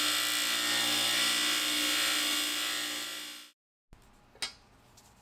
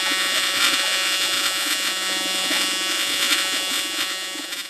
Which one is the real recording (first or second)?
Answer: first